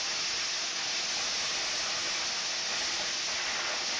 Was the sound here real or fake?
real